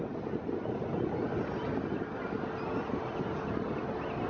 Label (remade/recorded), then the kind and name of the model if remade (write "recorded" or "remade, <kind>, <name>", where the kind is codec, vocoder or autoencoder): recorded